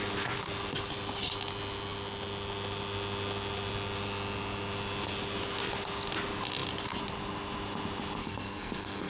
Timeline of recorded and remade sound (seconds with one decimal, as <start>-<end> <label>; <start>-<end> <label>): 0.0-8.2 recorded; 8.2-9.1 remade

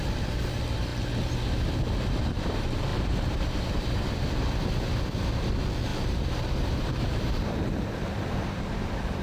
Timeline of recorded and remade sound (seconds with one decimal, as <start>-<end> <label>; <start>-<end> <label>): 0.0-0.9 remade; 0.9-2.2 recorded; 2.2-2.9 remade; 2.9-5.3 recorded; 5.3-9.2 remade

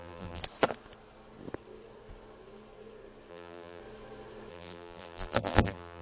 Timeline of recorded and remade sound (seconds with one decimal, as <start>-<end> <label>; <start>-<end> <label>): 0.0-0.4 remade; 0.4-3.3 recorded; 3.3-3.8 remade; 3.8-4.5 recorded; 4.5-6.0 remade

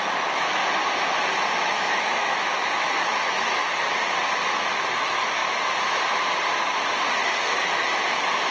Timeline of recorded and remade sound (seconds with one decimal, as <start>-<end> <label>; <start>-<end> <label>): 0.0-0.6 remade; 0.6-1.5 recorded; 1.5-3.6 remade; 3.6-4.5 recorded; 4.5-5.4 remade; 5.4-7.6 recorded; 7.6-8.5 remade

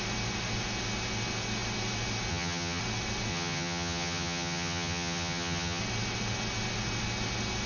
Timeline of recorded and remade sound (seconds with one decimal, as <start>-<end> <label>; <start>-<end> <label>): 0.0-2.3 recorded; 2.3-2.8 remade; 2.8-3.3 recorded; 3.3-5.8 remade; 5.8-7.7 recorded